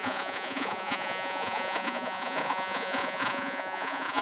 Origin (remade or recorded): remade